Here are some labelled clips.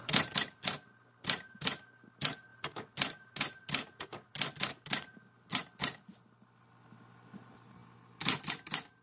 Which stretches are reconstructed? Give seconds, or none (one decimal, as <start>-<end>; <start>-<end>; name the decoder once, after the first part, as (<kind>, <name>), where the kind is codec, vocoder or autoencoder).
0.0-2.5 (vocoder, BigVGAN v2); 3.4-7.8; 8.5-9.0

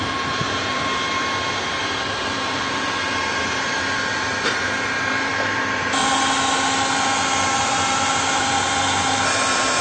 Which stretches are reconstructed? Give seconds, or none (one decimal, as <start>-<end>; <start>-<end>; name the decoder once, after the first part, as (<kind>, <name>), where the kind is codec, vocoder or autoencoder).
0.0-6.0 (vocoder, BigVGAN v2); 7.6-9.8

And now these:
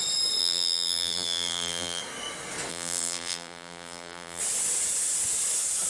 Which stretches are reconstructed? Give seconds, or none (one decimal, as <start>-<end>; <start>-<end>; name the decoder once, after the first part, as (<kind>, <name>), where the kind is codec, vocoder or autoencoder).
0.4-2.0 (vocoder, BigVGAN v2); 2.7-4.4